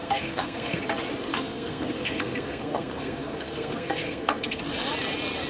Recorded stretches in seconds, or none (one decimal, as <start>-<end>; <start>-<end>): 0.8-1.3; 4.6-5.5